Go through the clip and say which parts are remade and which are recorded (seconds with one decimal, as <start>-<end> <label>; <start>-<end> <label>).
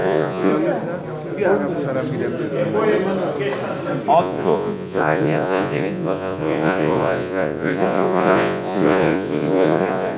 0.0-0.5 remade; 0.5-4.2 recorded; 4.2-10.2 remade